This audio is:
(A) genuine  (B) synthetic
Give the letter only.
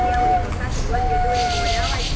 A